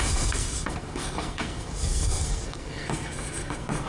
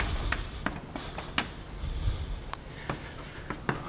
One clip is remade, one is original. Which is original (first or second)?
second